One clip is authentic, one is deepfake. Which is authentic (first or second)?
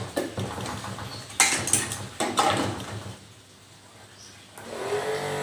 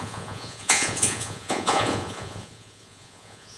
first